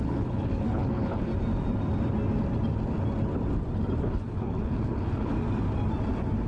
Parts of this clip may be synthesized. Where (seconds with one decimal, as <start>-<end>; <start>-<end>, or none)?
0.0-1.3; 4.0-5.3

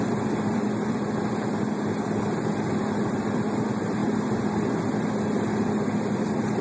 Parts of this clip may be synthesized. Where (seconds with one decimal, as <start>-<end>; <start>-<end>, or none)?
none